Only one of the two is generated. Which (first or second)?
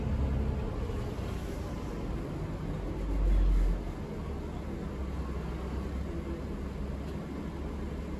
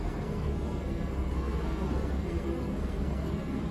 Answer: second